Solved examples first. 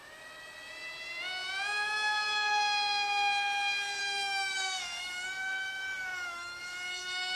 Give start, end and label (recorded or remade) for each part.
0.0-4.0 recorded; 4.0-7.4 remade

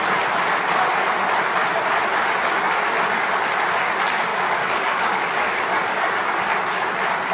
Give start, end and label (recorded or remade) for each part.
0.0-4.3 recorded; 4.3-6.4 remade; 6.4-7.3 recorded

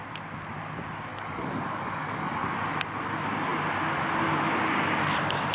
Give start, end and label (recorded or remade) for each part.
0.0-1.1 recorded; 1.1-2.4 remade; 2.4-5.5 recorded

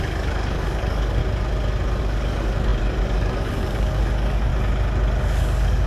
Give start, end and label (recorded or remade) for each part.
0.0-1.2 remade; 1.2-2.0 recorded; 2.0-4.5 remade; 4.5-5.2 recorded; 5.2-5.9 remade